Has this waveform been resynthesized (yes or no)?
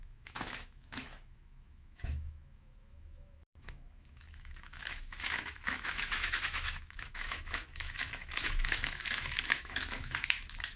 yes